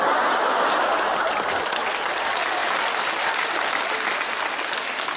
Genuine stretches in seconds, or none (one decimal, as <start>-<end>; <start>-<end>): 0.0-5.2